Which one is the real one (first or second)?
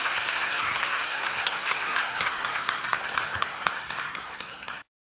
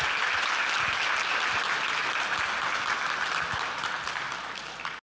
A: second